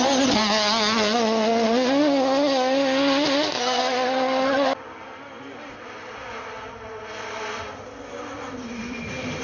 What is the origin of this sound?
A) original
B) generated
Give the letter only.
A